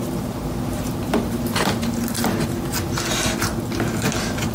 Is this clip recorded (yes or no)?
yes